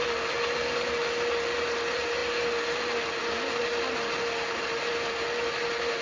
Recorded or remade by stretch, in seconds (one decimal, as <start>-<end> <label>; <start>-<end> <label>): 0.0-6.0 recorded